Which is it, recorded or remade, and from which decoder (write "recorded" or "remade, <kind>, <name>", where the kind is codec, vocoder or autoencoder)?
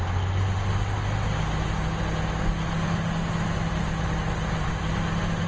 recorded